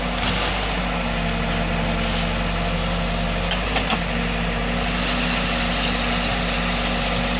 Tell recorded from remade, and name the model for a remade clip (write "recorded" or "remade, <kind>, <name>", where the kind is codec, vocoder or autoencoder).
recorded